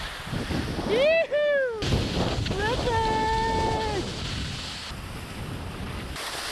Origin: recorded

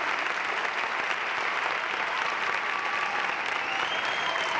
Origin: recorded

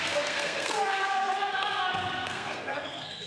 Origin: remade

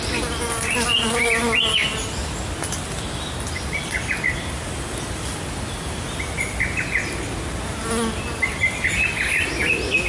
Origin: recorded